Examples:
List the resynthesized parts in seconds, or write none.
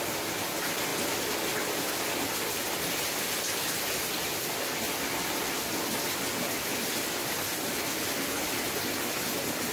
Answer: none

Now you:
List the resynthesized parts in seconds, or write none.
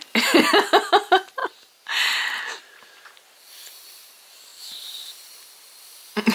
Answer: 1.4-2.6 (vocoder, BigVGAN v2); 4.5-6.3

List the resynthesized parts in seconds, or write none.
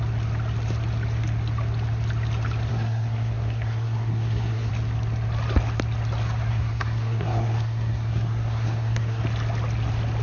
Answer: 2.7-4.7 (codec, SNAC); 6.5-9.2